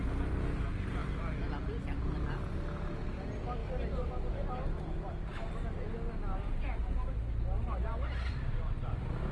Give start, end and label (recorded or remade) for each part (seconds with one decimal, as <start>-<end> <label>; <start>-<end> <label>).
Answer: 0.0-9.3 recorded

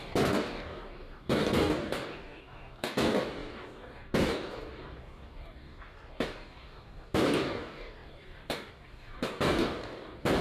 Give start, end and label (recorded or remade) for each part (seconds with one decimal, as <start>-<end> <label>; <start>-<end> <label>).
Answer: 0.0-10.4 remade

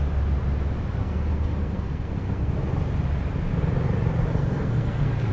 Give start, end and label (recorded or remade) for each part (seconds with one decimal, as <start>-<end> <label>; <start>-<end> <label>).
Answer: 0.0-1.0 recorded; 1.0-2.5 remade; 2.5-4.3 recorded; 4.3-5.3 remade

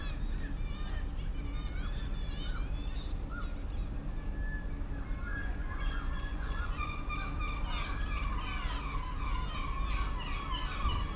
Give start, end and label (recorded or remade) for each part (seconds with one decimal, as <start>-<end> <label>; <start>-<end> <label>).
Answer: 0.0-5.3 recorded; 5.3-7.1 remade; 7.1-11.2 recorded

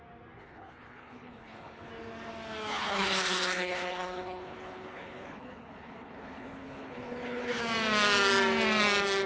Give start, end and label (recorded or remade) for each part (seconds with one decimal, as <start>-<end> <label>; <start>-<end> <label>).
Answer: 0.0-0.4 recorded; 0.4-1.9 remade; 1.9-2.7 recorded; 2.7-7.6 remade; 7.6-9.3 recorded

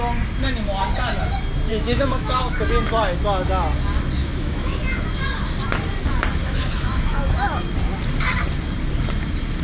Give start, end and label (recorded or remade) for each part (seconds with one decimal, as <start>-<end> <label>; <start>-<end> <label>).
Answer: 0.0-1.7 recorded; 1.7-2.4 remade; 2.4-4.2 recorded; 4.2-4.8 remade; 4.8-6.4 recorded; 6.4-7.2 remade; 7.2-9.6 recorded

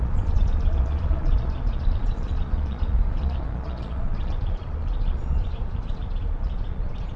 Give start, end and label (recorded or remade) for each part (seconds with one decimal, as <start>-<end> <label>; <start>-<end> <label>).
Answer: 0.0-7.2 remade

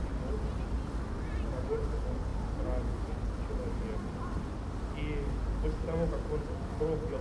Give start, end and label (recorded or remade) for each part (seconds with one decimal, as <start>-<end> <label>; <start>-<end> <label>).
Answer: 0.0-7.2 recorded